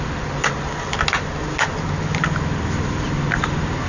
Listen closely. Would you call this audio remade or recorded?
recorded